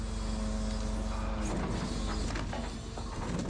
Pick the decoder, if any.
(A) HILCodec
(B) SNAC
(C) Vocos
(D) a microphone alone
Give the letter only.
D